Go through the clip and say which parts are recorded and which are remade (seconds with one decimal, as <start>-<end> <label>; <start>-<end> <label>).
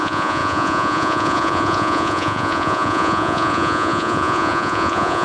0.0-5.2 remade